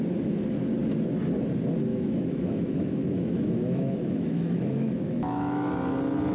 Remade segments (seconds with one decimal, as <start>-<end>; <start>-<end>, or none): 1.9-5.7